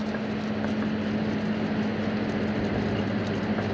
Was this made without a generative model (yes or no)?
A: yes